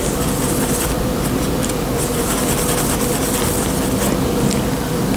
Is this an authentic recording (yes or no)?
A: yes